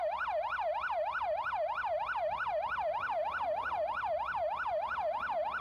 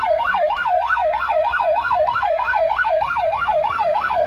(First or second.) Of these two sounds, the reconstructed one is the second